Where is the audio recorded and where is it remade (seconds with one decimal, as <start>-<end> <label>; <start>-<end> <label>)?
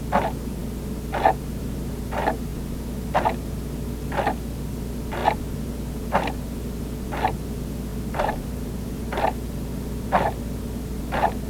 0.0-7.9 recorded; 7.9-9.0 remade; 9.0-11.5 recorded